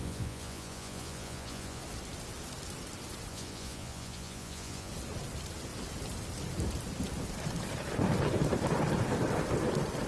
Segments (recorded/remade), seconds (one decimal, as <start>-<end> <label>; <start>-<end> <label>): 0.0-1.8 remade; 1.8-3.3 recorded; 3.3-4.9 remade; 4.9-10.1 recorded